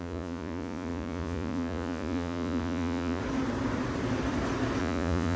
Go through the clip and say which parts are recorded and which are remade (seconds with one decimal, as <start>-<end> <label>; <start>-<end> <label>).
0.0-3.2 remade; 3.2-4.8 recorded; 4.8-5.4 remade